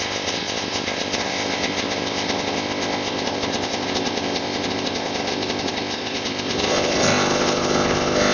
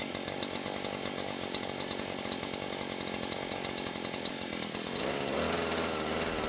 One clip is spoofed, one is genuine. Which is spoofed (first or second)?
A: first